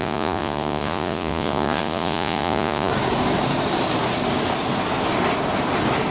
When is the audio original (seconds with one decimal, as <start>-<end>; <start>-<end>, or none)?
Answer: 2.9-6.1

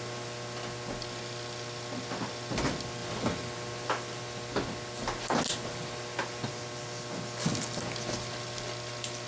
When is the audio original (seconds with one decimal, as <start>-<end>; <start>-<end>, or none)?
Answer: 0.0-9.3

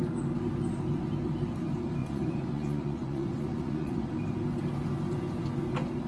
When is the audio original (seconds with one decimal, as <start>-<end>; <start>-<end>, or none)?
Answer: 0.0-2.0; 4.1-6.1

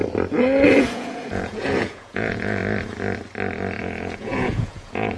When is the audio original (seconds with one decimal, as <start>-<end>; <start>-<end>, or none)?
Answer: 0.0-0.8; 2.6-3.8

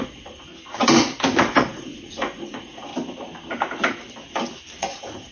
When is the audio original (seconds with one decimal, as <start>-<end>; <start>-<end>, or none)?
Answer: 0.5-1.4; 2.9-4.8

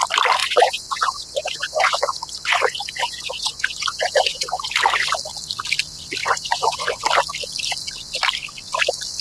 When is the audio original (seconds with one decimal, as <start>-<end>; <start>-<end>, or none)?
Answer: 0.0-0.4; 4.7-6.2; 7.0-9.2